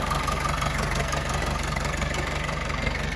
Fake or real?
fake